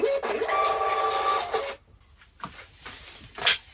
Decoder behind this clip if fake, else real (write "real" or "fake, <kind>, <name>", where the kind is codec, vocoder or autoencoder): real